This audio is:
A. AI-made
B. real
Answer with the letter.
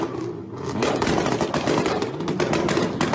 B